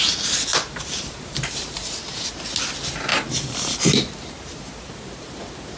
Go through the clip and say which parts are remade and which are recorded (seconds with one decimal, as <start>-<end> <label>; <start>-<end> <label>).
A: 0.0-0.5 recorded; 0.5-1.9 remade; 1.9-3.1 recorded; 3.1-3.9 remade; 3.9-5.8 recorded